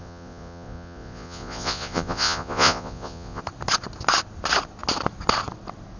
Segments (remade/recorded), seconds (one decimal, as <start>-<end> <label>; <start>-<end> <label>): 0.0-3.4 remade; 3.4-6.0 recorded